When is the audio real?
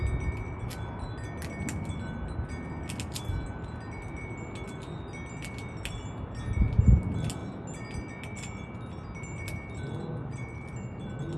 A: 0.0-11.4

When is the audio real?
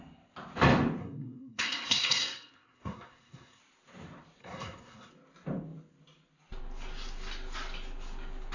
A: 0.0-1.0; 3.6-4.4; 5.1-8.5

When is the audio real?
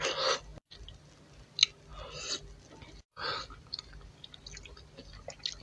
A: 0.0-5.6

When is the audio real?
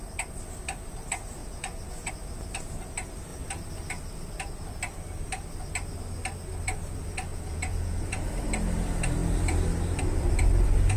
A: 0.0-1.4; 2.1-7.3; 8.3-11.0